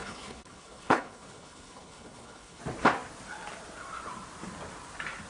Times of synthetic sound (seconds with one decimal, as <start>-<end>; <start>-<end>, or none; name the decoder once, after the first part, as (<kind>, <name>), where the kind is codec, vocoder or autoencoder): 0.0-2.6 (codec, HILCodec)

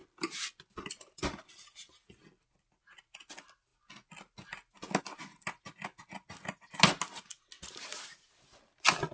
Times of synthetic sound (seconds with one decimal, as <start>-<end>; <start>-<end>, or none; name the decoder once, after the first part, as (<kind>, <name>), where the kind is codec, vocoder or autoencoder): none

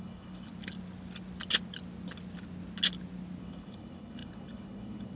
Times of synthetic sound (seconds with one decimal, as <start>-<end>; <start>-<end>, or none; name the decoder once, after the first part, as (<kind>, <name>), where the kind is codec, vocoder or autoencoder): 0.0-0.5 (codec, HILCodec); 3.4-5.2

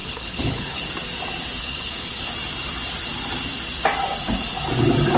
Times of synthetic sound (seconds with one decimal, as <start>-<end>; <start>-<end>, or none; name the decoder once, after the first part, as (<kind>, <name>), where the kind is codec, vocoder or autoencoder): 0.0-0.9 (codec, HILCodec); 1.6-2.3

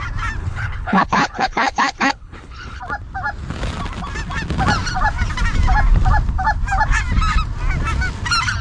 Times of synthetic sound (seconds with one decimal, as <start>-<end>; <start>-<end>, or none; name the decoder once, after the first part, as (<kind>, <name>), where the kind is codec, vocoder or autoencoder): 0.4-2.8 (codec, HILCodec)

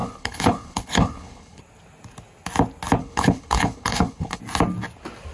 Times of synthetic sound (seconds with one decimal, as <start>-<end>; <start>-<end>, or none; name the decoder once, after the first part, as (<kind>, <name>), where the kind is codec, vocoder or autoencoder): 0.0-1.6 (codec, HILCodec); 3.0-4.4

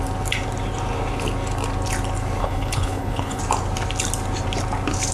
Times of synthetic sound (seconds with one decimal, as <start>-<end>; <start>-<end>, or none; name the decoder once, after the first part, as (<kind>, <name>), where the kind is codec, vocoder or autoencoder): 2.4-3.4 (codec, HILCodec)